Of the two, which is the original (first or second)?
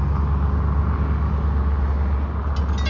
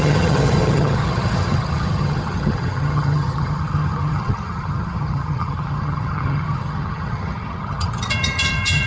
first